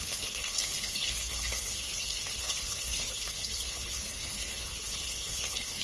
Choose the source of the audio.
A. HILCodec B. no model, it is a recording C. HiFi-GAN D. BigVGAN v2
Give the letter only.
A